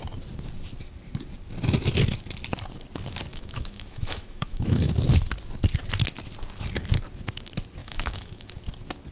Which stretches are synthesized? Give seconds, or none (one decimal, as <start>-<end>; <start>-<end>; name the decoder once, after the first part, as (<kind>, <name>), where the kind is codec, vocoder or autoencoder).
3.3-4.9 (autoencoder, DAC-VAE); 7.8-8.5